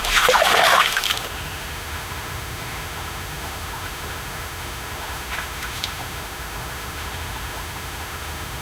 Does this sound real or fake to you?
fake